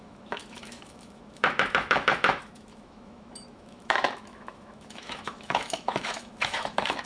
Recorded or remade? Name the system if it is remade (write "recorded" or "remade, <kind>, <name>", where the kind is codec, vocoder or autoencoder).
remade, autoencoder, DAC-VAE